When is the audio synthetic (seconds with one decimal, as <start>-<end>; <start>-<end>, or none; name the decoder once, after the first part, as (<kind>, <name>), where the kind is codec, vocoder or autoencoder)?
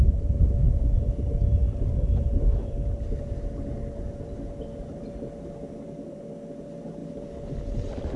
none